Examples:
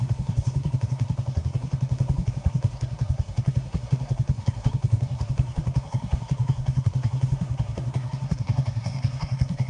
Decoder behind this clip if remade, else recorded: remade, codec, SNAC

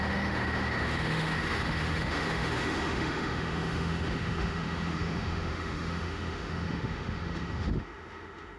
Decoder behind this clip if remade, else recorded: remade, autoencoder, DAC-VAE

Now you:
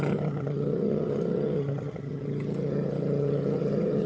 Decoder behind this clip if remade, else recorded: remade, vocoder, HiFi-GAN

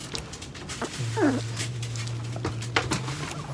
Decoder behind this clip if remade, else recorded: recorded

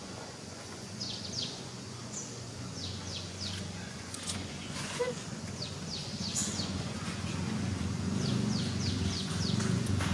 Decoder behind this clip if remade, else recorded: remade, vocoder, Vocos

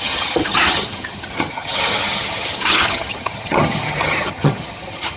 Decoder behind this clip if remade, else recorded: remade, vocoder, HiFi-GAN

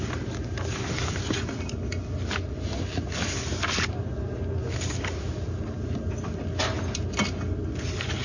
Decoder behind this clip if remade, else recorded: recorded